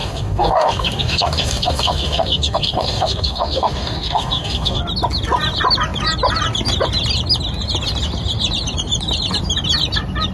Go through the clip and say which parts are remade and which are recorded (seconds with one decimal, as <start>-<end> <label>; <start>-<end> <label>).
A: 0.0-4.8 remade; 4.8-10.3 recorded